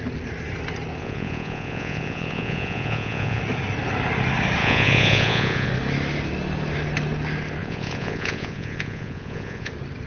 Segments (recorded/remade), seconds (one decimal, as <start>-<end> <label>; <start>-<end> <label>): 0.0-1.0 recorded; 1.0-3.4 remade; 3.4-4.6 recorded; 4.6-5.7 remade; 5.7-7.6 recorded; 7.6-9.7 remade; 9.7-10.1 recorded